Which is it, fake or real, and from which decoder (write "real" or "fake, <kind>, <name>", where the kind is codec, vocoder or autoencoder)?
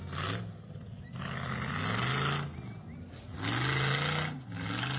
real